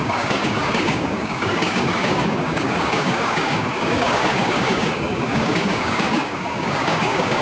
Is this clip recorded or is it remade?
remade